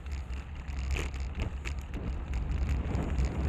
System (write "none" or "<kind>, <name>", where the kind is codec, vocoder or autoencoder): none